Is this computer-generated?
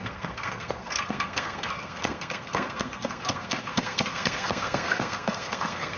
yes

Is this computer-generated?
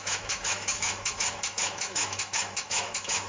yes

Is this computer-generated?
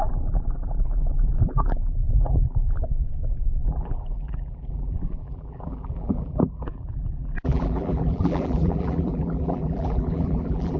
yes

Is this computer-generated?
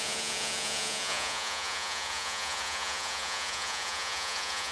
yes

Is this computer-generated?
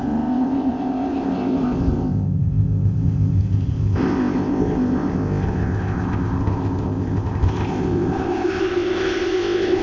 yes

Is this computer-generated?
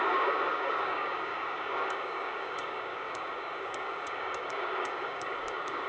yes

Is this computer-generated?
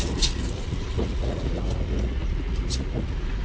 yes